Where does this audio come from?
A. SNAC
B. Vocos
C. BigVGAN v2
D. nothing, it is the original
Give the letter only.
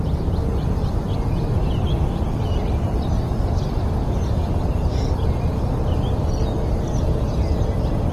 D